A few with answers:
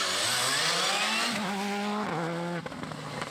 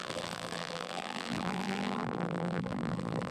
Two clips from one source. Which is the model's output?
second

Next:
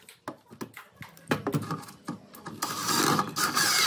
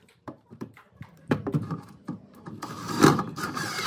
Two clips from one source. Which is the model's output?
second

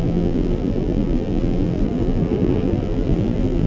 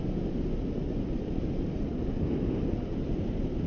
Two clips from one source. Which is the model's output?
first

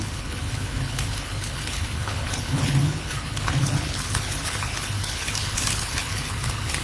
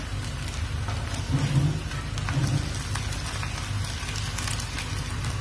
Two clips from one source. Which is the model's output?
first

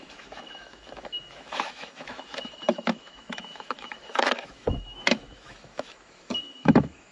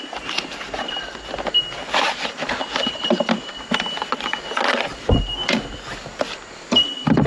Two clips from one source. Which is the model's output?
first